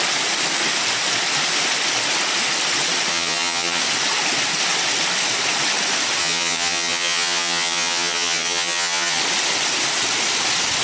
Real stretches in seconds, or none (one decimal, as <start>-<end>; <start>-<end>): 0.0-3.1; 3.8-6.2; 9.2-10.8